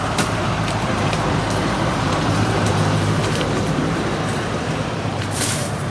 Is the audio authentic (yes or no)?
no